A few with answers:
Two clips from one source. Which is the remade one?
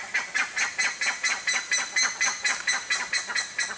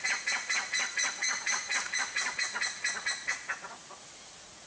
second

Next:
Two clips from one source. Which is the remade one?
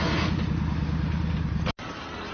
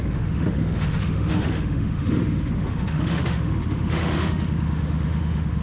second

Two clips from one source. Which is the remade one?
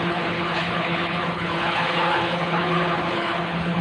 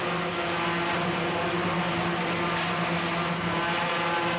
first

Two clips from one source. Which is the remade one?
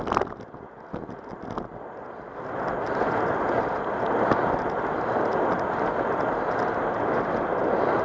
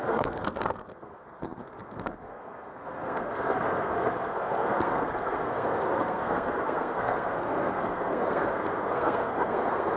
second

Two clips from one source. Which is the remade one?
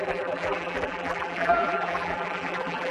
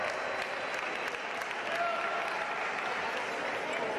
first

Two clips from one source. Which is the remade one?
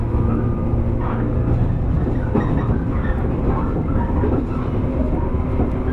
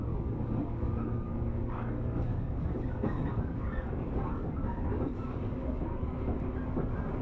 second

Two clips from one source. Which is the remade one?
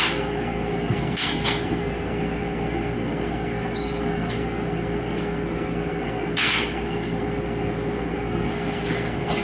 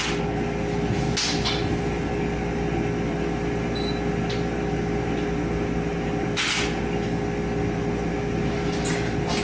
first